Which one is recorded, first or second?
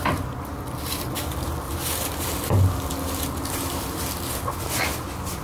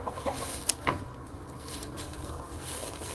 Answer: first